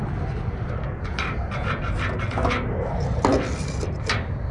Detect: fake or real real